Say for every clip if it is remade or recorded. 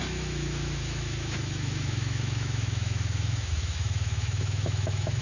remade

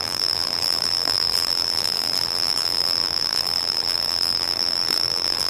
remade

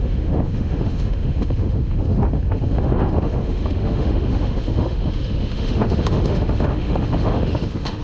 remade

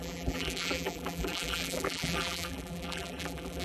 remade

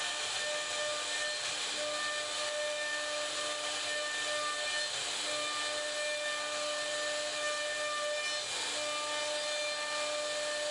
recorded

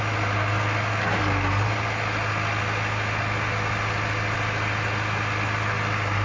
recorded